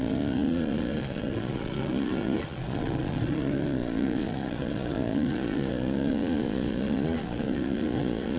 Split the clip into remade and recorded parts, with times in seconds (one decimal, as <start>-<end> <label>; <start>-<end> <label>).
0.0-8.4 remade